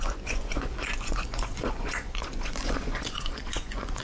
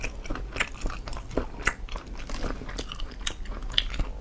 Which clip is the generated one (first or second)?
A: first